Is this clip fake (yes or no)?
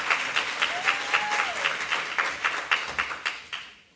no